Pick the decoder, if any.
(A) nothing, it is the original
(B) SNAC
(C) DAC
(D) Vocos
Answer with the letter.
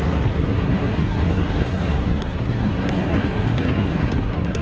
B